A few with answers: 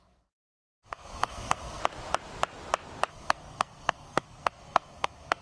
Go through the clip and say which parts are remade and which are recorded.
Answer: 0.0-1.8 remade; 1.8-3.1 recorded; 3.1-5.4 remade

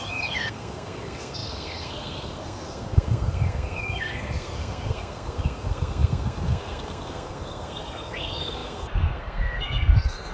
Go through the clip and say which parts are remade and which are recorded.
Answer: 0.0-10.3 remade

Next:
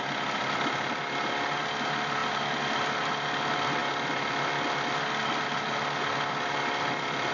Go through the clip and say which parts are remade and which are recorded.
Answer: 0.0-7.3 recorded

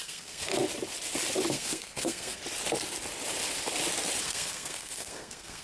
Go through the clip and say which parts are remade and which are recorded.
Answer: 0.0-0.5 remade; 0.5-1.5 recorded; 1.5-2.4 remade; 2.4-4.2 recorded; 4.2-5.6 remade

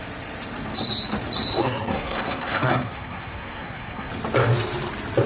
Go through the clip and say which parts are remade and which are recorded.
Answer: 0.0-1.6 recorded; 1.6-4.1 remade; 4.1-5.3 recorded

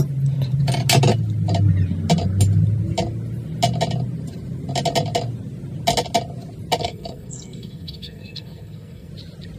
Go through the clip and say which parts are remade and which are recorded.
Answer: 0.0-6.8 recorded; 6.8-9.1 remade; 9.1-9.6 recorded